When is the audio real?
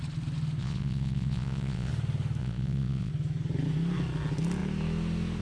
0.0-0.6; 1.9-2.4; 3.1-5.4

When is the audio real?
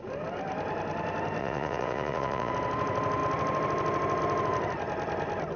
0.0-1.4; 2.5-5.6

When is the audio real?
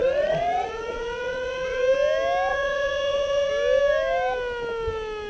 1.8-2.5; 3.5-5.3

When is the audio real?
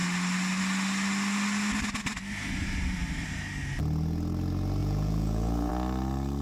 0.0-4.8; 5.7-6.4